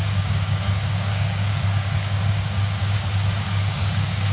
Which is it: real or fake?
fake